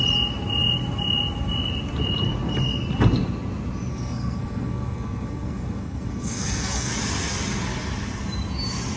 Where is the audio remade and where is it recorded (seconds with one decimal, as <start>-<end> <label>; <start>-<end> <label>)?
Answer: 0.0-3.9 recorded; 3.9-6.9 remade; 6.9-9.0 recorded